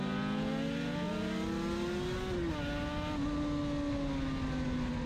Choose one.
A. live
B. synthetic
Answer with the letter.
A